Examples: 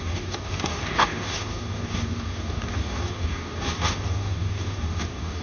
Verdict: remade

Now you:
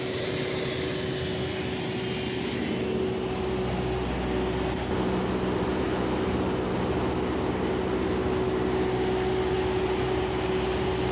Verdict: recorded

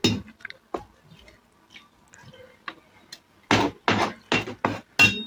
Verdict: recorded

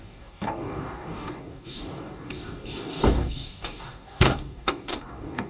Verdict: remade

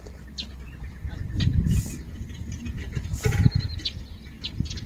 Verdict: recorded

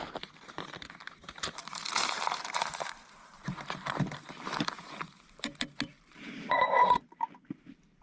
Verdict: remade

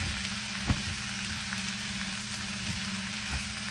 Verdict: recorded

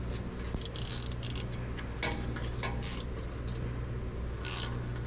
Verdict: recorded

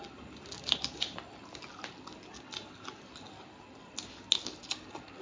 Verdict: recorded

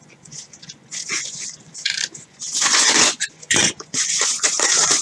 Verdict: remade